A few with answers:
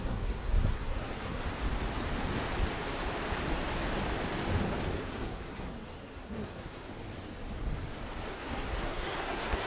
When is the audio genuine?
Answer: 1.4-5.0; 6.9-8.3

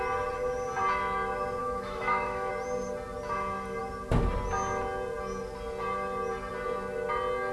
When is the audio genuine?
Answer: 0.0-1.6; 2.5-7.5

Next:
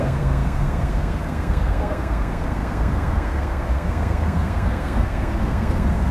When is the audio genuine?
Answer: none

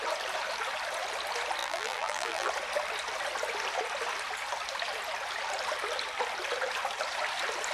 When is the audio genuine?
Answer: 0.0-1.6; 2.5-7.7